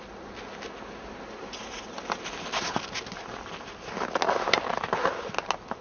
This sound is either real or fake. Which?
real